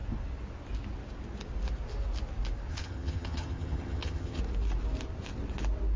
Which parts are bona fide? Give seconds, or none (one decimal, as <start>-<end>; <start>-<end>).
0.0-2.7; 4.4-6.0